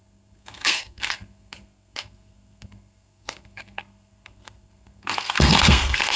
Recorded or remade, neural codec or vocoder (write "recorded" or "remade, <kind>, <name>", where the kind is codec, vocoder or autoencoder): remade, codec, SNAC